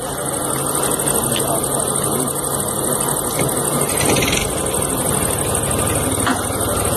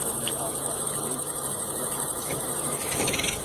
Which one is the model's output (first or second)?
second